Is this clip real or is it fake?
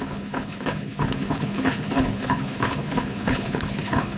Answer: fake